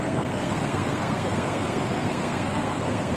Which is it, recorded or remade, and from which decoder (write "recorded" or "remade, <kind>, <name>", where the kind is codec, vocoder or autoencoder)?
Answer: remade, codec, SNAC